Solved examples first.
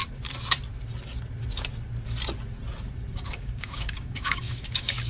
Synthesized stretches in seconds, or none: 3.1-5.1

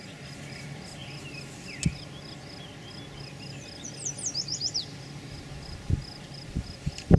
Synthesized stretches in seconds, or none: 0.0-1.0; 4.8-7.2

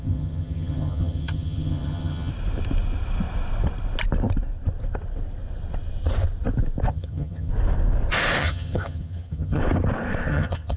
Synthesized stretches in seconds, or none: 0.0-2.3; 6.9-7.5; 8.4-9.6; 10.3-10.8